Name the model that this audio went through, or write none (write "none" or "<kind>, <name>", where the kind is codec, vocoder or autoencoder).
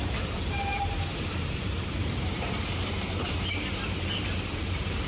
vocoder, BigVGAN v2